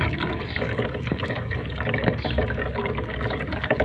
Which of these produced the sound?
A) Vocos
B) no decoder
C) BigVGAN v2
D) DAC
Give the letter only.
D